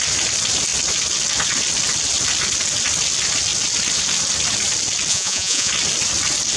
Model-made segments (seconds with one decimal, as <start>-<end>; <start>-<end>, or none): 5.1-5.7